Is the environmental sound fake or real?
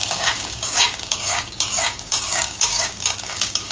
fake